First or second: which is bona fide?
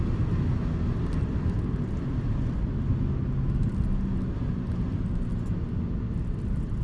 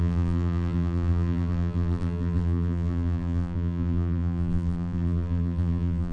first